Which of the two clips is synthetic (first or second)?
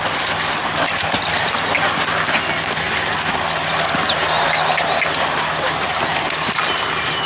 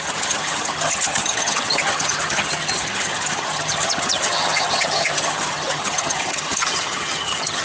second